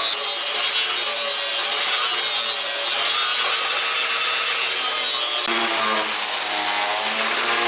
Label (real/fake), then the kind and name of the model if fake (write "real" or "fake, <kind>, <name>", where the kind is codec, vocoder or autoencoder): real